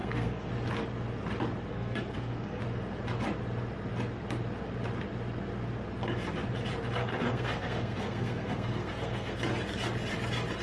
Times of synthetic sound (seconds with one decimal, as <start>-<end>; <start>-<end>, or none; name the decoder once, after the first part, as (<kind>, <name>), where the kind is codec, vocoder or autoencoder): 0.0-0.5 (codec, SNAC); 1.7-2.6; 7.0-9.4